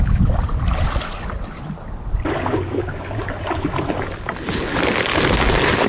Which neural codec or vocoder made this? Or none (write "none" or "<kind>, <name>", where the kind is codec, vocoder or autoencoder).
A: none